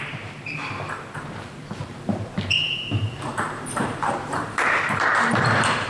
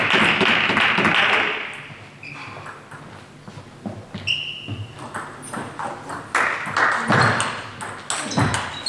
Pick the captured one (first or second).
second